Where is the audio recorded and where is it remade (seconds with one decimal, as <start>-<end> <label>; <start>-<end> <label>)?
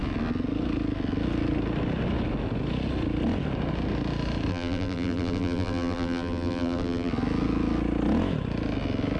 0.0-4.5 recorded; 4.5-7.1 remade; 7.1-9.2 recorded